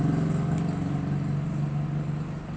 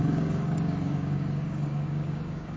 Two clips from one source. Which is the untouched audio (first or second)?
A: first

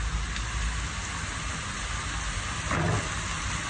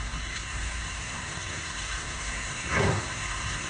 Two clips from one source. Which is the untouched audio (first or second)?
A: first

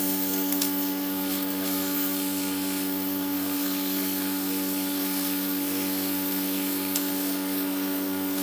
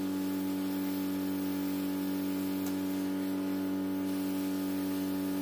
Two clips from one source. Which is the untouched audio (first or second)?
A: second